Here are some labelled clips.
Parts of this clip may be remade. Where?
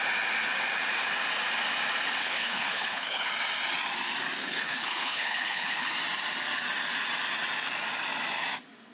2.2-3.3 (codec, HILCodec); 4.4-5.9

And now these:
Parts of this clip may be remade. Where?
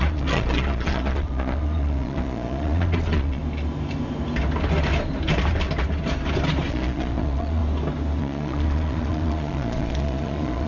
0.0-3.4 (vocoder, Vocos); 6.7-7.6; 8.2-10.7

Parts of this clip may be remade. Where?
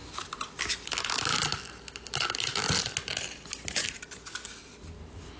none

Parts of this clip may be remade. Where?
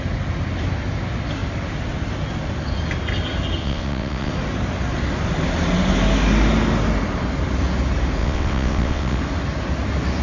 3.6-4.3 (vocoder, WaveNeXt); 8.2-9.2